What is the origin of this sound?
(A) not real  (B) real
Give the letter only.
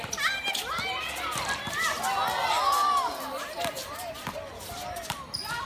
B